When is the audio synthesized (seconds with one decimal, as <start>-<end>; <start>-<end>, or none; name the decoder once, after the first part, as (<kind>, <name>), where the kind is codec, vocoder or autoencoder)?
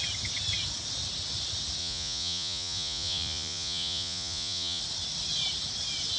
1.8-4.8 (vocoder, Vocos)